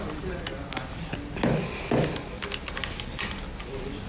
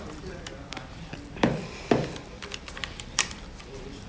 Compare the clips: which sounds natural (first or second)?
first